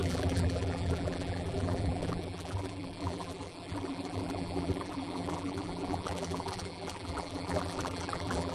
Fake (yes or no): yes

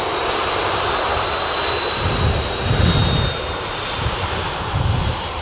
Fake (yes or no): yes